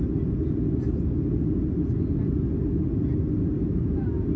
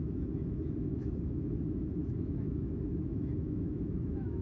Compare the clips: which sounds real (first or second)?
first